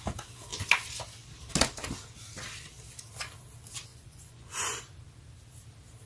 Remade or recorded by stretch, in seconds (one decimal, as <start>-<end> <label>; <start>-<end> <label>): 0.0-3.9 recorded; 3.9-4.8 remade; 4.8-6.1 recorded